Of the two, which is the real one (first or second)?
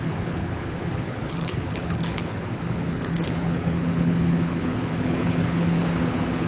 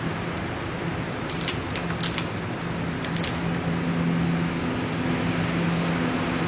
second